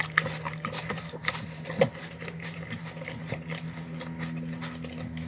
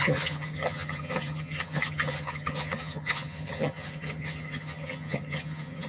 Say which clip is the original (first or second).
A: first